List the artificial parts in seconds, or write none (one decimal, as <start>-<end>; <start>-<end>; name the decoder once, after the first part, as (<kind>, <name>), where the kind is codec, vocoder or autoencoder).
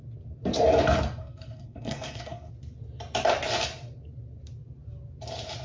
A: 1.2-2.5 (codec, SNAC)